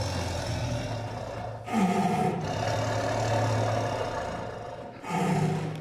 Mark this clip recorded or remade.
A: recorded